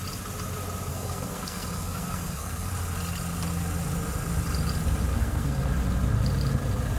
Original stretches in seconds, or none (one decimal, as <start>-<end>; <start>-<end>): 0.0-0.9; 2.7-5.1; 5.6-7.0